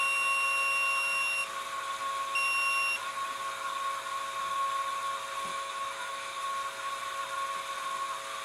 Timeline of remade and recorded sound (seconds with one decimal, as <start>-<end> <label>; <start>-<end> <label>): 0.0-5.5 recorded; 5.5-6.4 remade; 6.4-8.4 recorded